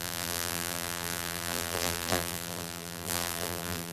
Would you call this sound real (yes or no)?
no